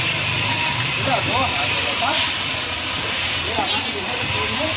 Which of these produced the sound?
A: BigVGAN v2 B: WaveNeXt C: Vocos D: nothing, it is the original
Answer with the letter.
A